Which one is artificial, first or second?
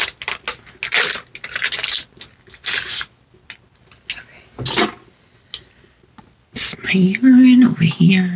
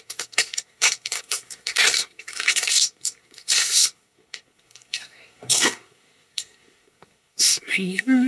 second